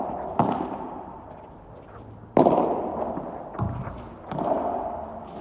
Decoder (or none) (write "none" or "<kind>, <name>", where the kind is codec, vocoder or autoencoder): vocoder, BigVGAN v2